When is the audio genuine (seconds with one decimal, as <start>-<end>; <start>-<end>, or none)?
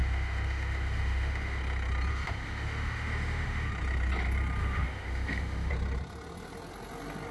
1.6-2.1; 3.7-4.6; 5.7-7.3